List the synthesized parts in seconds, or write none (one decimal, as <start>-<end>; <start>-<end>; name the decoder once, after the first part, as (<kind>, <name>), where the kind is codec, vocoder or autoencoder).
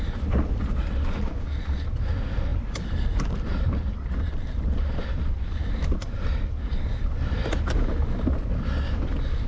2.5-6.4 (vocoder, BigVGAN v2)